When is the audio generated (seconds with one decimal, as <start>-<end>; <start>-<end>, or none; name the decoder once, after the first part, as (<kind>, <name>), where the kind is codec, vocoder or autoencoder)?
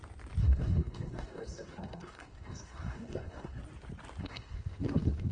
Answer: 0.4-3.6 (codec, SNAC); 4.2-5.3